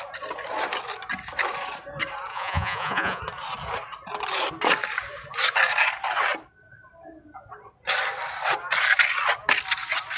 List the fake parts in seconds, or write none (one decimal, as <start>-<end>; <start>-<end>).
2.3-3.2

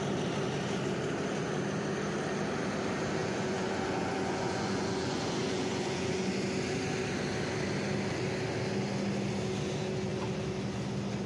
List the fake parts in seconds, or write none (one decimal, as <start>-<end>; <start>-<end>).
3.2-6.3

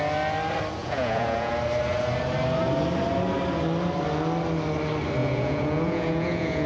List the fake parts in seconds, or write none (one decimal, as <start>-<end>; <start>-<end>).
0.8-1.5; 5.2-6.7

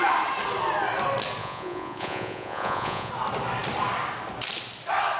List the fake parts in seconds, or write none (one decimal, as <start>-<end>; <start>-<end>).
1.4-3.1

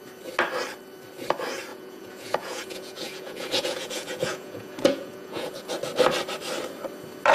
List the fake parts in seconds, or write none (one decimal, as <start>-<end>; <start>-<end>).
1.7-5.7

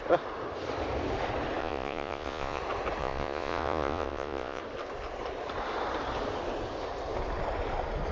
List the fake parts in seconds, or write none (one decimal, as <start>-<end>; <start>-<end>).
1.6-2.6; 3.0-4.6

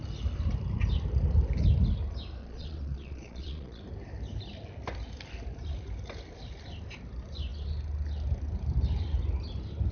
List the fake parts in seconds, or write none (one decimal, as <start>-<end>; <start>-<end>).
2.4-3.8

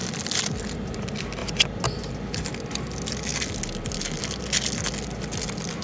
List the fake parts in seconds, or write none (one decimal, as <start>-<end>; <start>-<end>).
none